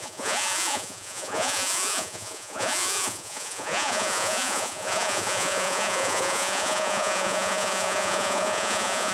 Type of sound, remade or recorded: remade